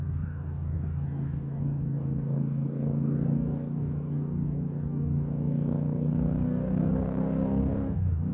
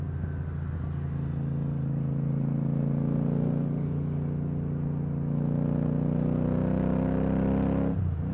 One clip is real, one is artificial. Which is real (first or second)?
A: second